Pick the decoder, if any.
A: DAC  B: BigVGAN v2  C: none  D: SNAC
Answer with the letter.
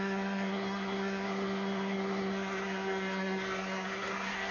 D